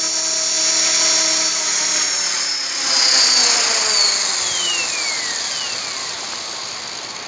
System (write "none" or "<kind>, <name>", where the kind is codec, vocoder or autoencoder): none